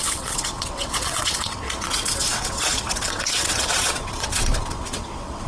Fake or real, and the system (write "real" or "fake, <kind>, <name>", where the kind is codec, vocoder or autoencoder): fake, vocoder, WaveNeXt